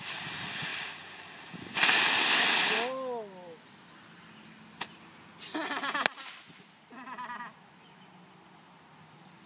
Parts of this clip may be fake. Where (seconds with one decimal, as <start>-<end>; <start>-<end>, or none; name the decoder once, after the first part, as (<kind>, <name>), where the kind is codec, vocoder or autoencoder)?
none